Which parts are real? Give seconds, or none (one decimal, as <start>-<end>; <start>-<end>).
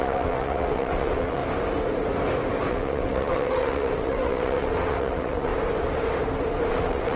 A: 1.4-2.7; 5.5-6.7